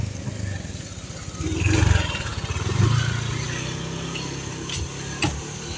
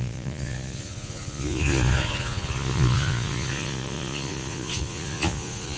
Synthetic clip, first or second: second